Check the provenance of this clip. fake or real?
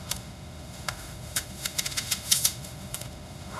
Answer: fake